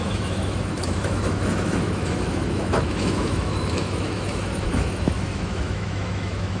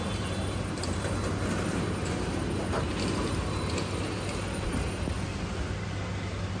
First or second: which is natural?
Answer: second